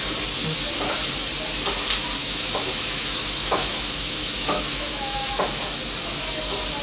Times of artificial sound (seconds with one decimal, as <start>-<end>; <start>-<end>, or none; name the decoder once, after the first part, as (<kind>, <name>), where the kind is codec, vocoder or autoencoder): 2.2-5.4 (autoencoder, DAC-VAE)